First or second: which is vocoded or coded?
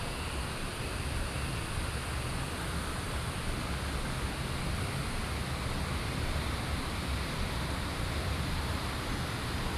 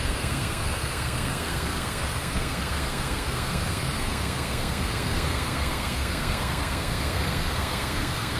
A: second